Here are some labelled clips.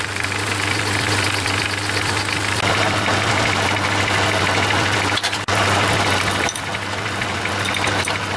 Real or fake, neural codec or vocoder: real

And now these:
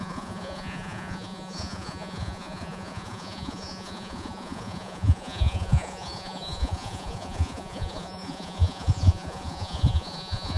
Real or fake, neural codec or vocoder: fake, vocoder, Vocos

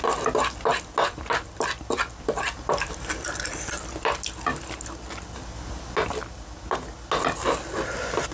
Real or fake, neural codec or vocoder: real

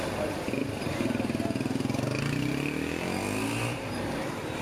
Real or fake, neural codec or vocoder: real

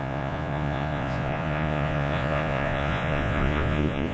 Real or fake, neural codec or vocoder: fake, vocoder, Vocos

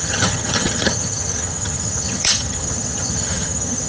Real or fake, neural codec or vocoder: fake, vocoder, HiFi-GAN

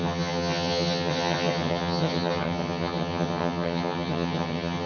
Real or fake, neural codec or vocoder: fake, vocoder, HiFi-GAN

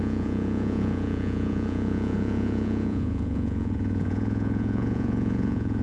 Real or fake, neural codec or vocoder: fake, vocoder, Vocos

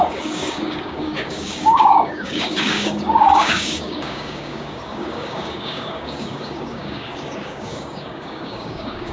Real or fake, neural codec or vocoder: fake, codec, DAC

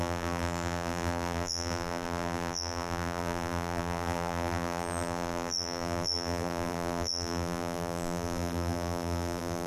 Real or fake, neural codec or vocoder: fake, vocoder, BigVGAN v2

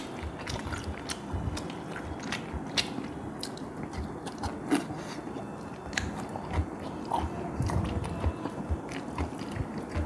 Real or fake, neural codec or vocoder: real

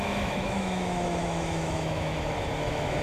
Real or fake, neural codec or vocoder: fake, autoencoder, DAC-VAE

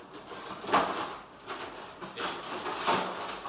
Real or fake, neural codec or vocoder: real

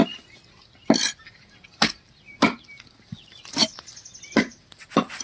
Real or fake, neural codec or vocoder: real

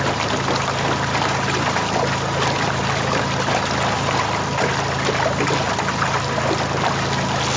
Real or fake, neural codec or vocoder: fake, vocoder, BigVGAN v2